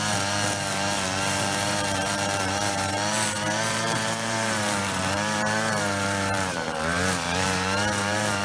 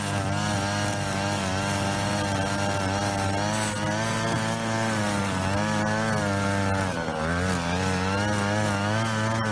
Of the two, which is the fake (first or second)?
first